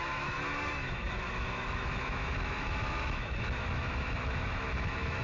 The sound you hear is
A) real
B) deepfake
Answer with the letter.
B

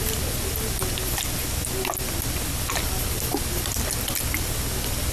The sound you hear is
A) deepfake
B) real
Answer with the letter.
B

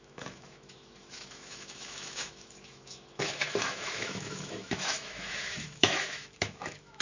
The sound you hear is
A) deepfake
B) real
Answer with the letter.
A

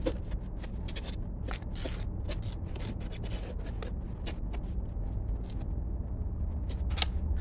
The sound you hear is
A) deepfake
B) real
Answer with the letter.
B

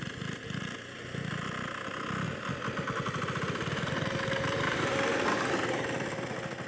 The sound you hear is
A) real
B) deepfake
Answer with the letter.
A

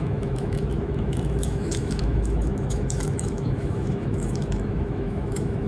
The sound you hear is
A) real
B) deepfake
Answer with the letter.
B